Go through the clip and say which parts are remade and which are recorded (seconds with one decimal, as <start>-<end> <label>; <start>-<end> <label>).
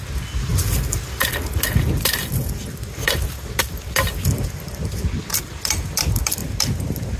0.0-7.2 recorded